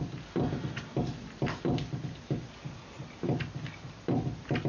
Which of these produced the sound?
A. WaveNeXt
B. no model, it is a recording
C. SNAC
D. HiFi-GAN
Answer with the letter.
B